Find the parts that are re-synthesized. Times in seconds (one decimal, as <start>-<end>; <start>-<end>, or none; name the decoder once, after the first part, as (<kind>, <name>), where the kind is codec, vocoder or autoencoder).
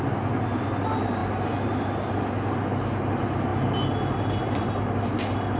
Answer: none